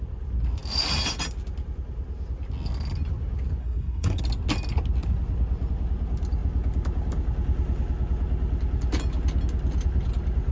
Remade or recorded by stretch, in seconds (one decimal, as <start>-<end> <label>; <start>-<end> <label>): 0.0-3.6 recorded; 3.6-4.2 remade; 4.2-10.5 recorded